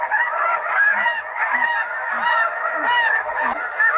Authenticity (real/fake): fake